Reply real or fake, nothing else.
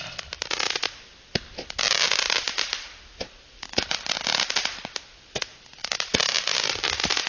real